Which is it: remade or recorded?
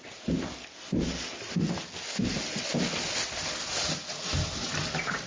recorded